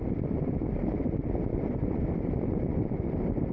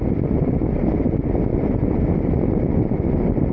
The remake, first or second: first